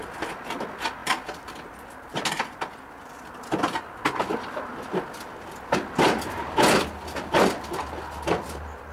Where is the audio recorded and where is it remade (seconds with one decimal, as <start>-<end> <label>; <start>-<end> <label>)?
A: 0.0-8.9 recorded